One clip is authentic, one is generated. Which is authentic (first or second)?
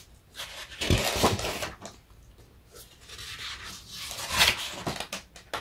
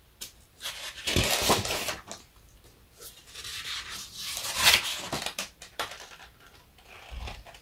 first